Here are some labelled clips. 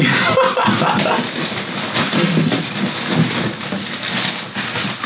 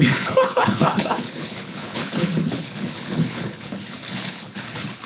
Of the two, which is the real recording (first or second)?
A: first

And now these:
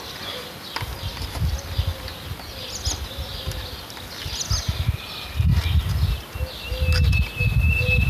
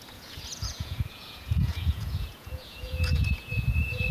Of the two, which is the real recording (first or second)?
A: first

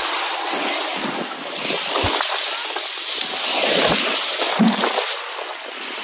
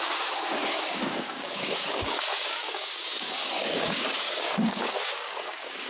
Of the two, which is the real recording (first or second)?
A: first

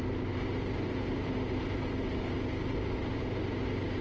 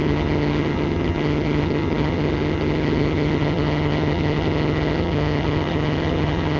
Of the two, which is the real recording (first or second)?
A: first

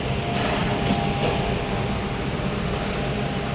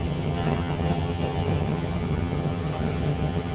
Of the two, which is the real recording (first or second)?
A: first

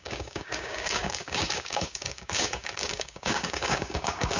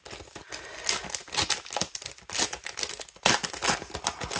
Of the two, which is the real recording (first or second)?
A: second